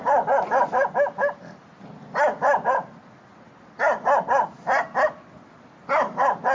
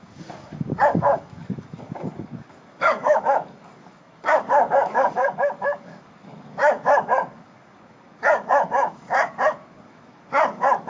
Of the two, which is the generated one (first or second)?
second